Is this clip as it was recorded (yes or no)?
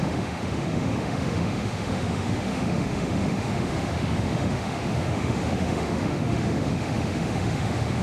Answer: no